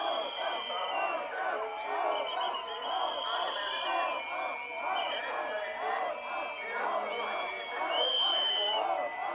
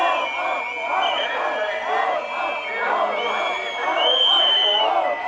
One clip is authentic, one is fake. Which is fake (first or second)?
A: second